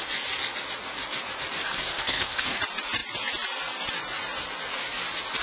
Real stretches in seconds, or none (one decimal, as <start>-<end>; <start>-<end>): 0.0-1.9; 2.6-5.4